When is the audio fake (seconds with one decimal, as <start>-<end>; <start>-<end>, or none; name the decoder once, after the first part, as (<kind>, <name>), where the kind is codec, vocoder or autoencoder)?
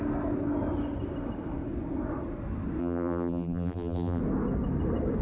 2.8-4.2 (vocoder, BigVGAN v2)